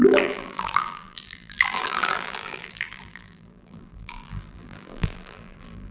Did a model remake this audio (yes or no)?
yes